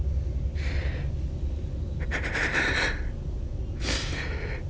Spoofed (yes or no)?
no